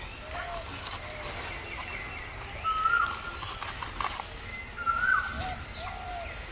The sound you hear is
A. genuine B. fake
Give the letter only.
A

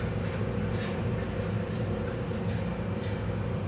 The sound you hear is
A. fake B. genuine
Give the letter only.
B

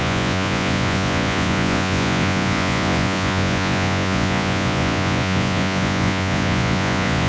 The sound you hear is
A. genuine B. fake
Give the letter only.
B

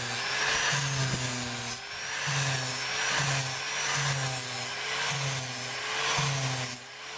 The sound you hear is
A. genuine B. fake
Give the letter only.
A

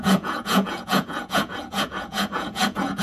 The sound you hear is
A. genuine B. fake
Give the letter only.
B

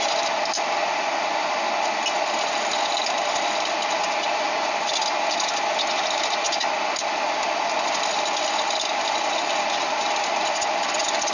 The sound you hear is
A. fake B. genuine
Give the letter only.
B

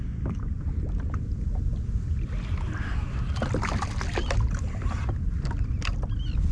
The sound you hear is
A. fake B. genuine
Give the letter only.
B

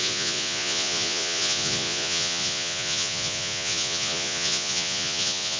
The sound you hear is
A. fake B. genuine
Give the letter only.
A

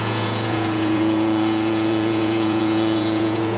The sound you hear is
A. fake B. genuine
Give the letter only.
A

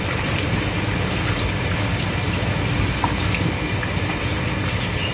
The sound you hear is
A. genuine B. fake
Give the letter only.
A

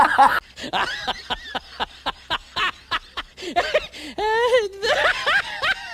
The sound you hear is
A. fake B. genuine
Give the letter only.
B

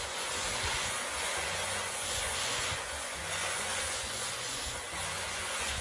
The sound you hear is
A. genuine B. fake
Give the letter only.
B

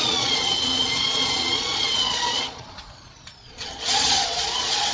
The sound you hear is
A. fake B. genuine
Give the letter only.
A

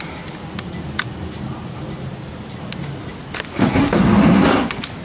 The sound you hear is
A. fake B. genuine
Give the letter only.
B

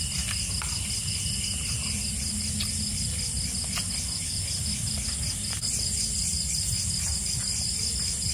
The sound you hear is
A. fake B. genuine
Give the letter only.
B